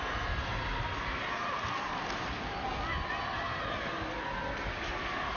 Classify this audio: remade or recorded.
recorded